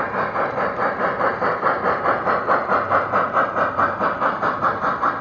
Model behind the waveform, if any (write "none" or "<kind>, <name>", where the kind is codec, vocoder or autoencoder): none